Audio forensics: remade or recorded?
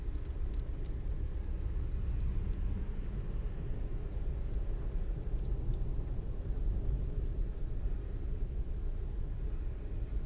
recorded